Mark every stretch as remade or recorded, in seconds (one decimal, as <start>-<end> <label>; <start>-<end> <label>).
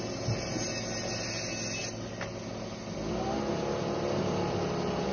0.0-5.1 recorded